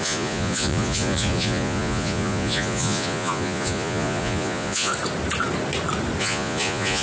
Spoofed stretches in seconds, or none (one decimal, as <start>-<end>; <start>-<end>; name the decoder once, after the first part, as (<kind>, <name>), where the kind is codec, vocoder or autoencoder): 0.0-4.9 (vocoder, Vocos); 6.2-7.0